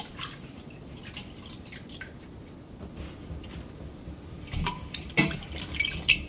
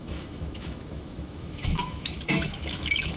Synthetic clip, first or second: second